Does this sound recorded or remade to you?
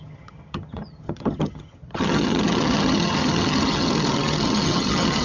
remade